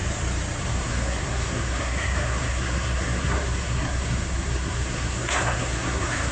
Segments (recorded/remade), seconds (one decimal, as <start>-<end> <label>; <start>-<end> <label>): 0.0-0.6 recorded; 0.6-6.3 remade